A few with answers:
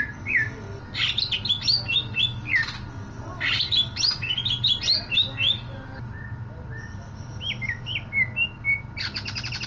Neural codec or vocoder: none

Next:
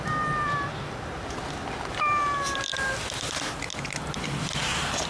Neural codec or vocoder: vocoder, BigVGAN v2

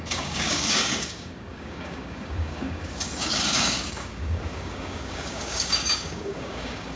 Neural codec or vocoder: codec, DAC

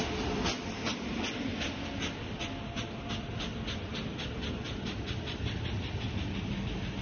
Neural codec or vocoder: vocoder, BigVGAN v2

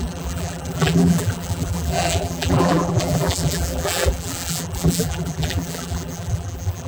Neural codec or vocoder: vocoder, BigVGAN v2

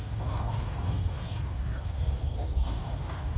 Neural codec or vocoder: codec, DAC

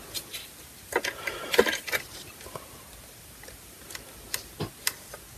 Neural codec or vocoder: none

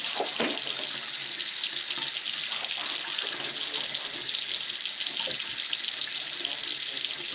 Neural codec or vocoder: none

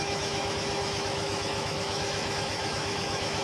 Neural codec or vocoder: autoencoder, DAC-VAE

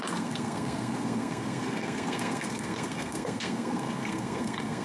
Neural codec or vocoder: codec, SNAC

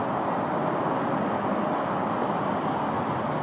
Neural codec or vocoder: none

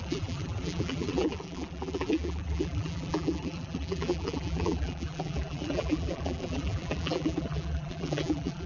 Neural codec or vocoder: vocoder, BigVGAN v2